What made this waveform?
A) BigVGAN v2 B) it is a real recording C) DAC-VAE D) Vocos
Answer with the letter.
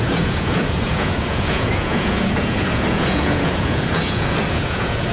D